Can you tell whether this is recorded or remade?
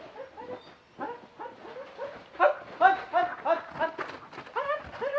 recorded